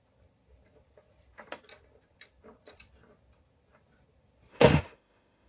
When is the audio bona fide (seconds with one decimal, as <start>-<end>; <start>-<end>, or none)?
0.0-4.5